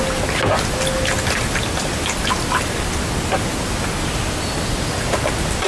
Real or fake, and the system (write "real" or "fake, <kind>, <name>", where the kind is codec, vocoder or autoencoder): real